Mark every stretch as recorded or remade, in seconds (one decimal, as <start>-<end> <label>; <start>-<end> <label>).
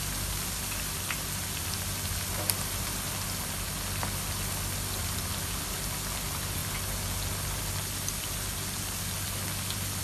0.0-10.0 recorded